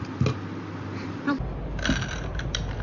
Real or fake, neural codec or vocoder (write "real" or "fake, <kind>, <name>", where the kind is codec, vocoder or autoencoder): real